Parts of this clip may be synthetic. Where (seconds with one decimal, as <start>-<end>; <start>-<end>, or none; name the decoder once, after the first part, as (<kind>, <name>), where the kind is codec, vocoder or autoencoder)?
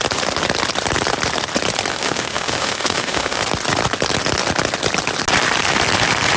1.9-3.4 (autoencoder, DAC-VAE)